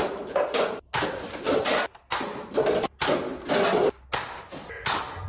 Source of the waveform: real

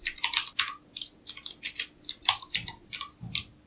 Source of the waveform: real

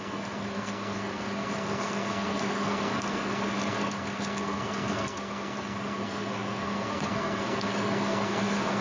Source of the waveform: fake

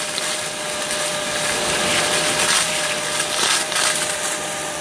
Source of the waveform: real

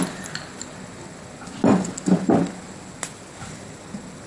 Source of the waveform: real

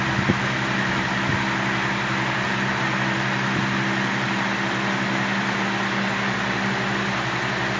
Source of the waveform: real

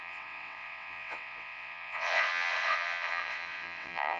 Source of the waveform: fake